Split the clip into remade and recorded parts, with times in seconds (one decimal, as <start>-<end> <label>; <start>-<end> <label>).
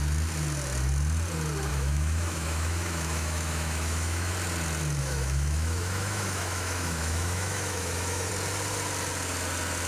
0.0-1.7 recorded; 1.7-4.3 remade; 4.3-5.0 recorded; 5.0-8.3 remade; 8.3-9.9 recorded